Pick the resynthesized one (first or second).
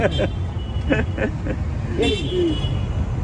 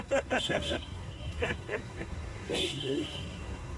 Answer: second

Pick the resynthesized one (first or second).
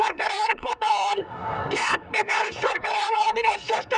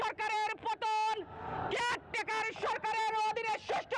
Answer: first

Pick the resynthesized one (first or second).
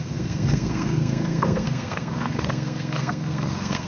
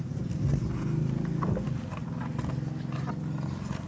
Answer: first